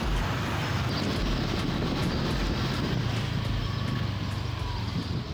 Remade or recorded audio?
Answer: recorded